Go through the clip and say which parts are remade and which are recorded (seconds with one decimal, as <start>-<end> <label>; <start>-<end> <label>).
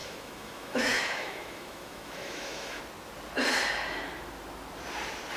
0.0-2.8 remade; 2.8-5.4 recorded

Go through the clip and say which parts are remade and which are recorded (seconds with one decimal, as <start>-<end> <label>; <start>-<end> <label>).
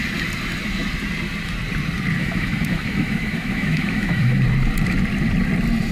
0.0-2.2 recorded; 2.2-4.4 remade; 4.4-5.9 recorded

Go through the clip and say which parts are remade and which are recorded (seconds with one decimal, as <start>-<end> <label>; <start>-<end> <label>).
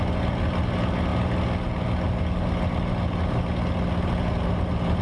0.0-5.0 recorded